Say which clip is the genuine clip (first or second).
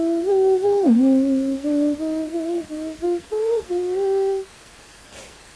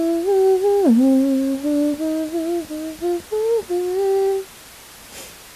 second